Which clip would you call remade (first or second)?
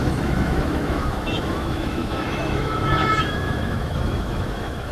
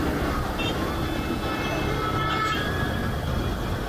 first